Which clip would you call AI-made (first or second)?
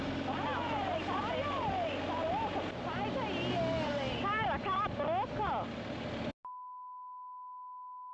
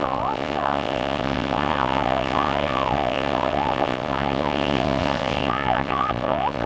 second